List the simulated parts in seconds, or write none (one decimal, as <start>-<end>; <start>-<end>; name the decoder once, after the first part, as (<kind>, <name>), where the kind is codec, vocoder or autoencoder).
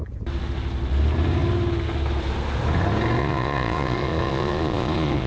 3.2-5.3 (vocoder, Vocos)